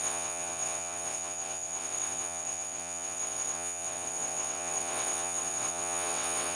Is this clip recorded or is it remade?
remade